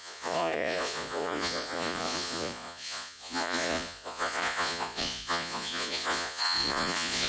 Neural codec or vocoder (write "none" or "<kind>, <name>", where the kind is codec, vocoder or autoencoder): vocoder, Vocos